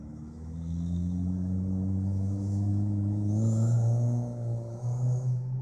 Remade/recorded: remade